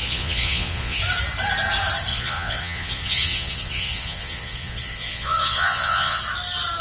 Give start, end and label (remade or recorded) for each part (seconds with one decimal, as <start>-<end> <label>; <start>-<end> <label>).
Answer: 0.0-1.0 remade; 1.0-2.1 recorded; 2.1-6.2 remade; 6.2-6.8 recorded